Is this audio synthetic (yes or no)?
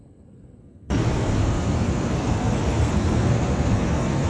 yes